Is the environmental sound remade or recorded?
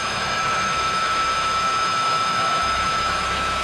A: remade